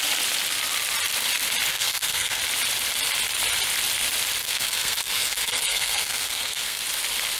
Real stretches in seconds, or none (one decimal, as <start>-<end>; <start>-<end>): 0.0-1.7; 2.4-4.4; 6.8-7.4